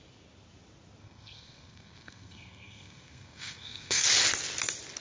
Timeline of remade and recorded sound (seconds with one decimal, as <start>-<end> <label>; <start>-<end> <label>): 0.0-1.0 recorded; 1.0-4.0 remade; 4.0-5.0 recorded